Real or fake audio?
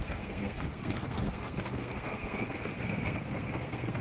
fake